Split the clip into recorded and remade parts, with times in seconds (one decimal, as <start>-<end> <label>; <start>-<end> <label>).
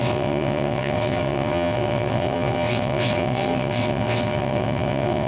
0.0-5.3 remade